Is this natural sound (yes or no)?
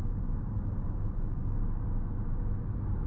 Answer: yes